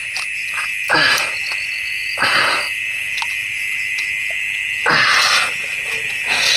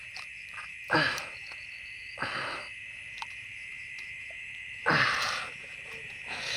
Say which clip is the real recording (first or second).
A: first